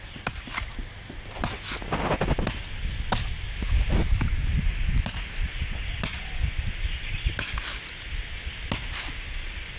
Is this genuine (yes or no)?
yes